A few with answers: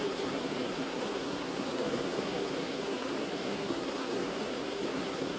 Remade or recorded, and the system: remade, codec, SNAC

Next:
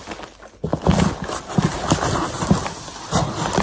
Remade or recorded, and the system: recorded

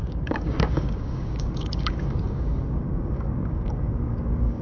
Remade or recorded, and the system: remade, codec, DAC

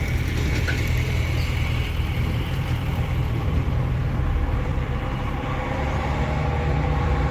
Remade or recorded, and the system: remade, vocoder, BigVGAN v2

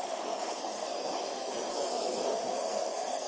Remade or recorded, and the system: remade, codec, SNAC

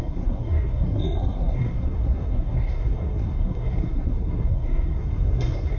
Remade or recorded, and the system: remade, codec, SNAC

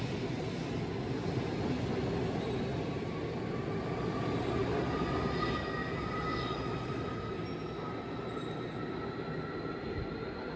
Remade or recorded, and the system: recorded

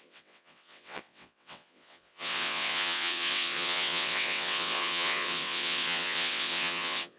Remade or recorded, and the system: remade, vocoder, WaveNeXt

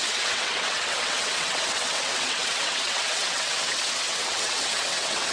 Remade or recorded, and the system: remade, vocoder, WaveNeXt